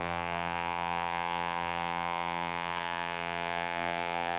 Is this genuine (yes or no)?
no